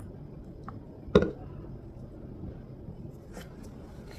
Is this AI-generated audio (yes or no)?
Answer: no